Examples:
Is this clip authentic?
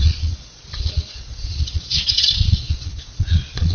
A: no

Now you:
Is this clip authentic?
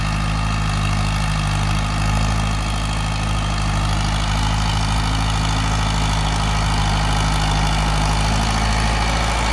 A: yes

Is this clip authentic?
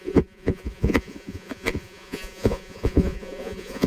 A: no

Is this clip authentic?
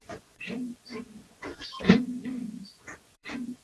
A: no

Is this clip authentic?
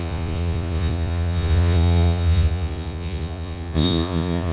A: no